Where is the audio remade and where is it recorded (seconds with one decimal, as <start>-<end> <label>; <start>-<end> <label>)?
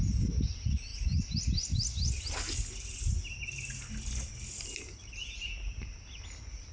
0.0-6.7 recorded